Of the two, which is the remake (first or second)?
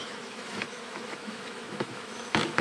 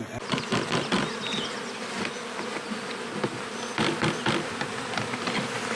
first